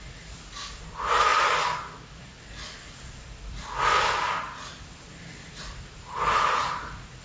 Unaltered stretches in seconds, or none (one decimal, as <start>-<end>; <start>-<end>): 0.0-7.2

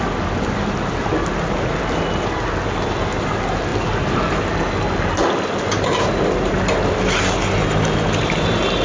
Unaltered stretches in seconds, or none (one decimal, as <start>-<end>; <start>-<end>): 0.0-8.8

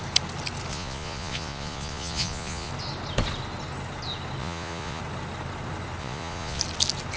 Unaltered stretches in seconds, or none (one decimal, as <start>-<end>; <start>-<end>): 0.0-0.7; 2.7-4.4; 5.0-6.0; 6.6-7.2

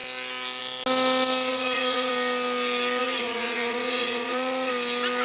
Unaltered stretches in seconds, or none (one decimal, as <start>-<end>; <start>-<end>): 0.0-1.5; 2.1-3.0; 4.7-5.2